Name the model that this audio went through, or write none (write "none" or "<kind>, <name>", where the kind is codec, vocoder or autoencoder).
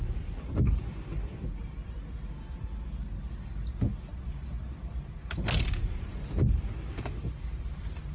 none